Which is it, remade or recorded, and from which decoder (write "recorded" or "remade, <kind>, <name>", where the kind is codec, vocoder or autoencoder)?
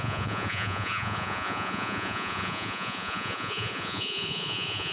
remade, vocoder, Vocos